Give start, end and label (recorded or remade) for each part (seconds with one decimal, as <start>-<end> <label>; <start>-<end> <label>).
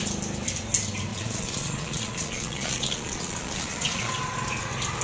0.0-1.1 recorded; 1.1-4.1 remade; 4.1-5.0 recorded